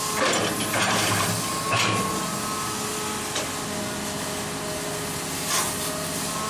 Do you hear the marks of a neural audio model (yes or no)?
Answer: no